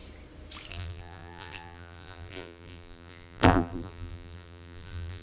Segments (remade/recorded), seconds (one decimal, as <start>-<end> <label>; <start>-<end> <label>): 0.0-0.7 recorded; 0.7-5.2 remade